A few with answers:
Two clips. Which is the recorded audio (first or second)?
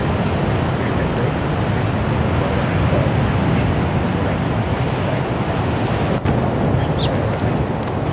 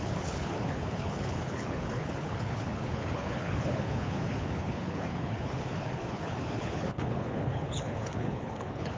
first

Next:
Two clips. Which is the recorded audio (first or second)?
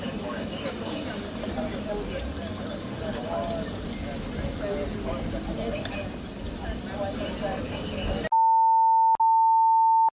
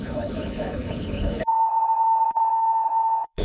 first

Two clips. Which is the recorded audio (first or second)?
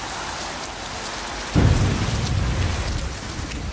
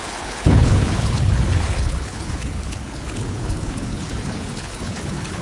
first